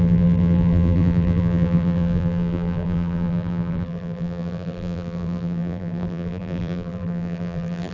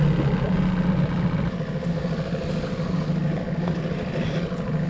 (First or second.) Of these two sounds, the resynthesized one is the first